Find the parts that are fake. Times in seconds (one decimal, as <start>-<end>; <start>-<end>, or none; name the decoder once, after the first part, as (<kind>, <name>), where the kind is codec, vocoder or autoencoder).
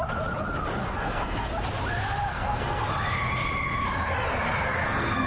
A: 0.8-1.5 (codec, SNAC); 2.3-2.9; 4.8-5.3